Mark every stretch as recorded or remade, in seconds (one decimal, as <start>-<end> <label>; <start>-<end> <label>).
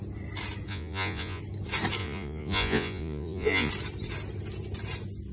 0.0-0.7 recorded; 0.7-1.4 remade; 1.4-2.0 recorded; 2.0-3.7 remade; 3.7-5.3 recorded